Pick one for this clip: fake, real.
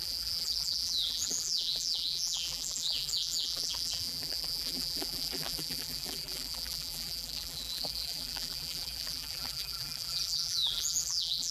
fake